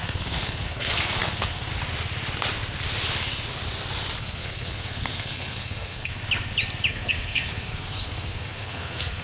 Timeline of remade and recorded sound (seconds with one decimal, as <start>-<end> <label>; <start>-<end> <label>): 0.0-1.7 remade; 1.7-4.2 recorded; 4.2-6.2 remade; 6.2-6.9 recorded; 6.9-9.2 remade